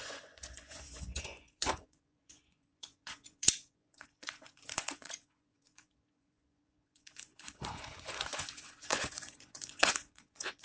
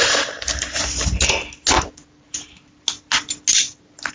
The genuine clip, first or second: second